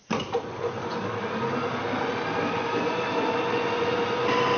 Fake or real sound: real